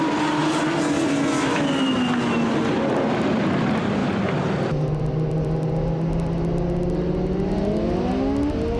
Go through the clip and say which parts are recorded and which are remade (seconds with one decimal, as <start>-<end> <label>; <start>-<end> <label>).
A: 0.0-8.8 recorded